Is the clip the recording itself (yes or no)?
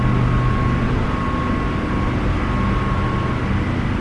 yes